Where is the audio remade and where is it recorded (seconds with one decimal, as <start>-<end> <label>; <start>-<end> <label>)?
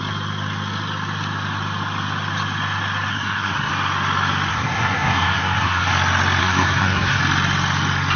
0.0-3.1 recorded; 3.1-3.7 remade; 3.7-4.5 recorded; 4.5-5.9 remade; 5.9-6.4 recorded; 6.4-7.2 remade; 7.2-8.2 recorded